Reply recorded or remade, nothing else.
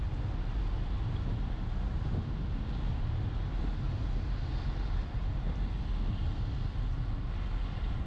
recorded